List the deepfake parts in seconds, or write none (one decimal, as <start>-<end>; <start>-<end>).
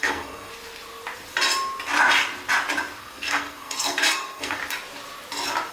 0.0-0.5; 3.0-4.6